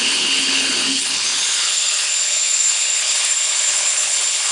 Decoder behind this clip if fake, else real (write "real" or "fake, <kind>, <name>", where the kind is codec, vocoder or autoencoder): fake, codec, HILCodec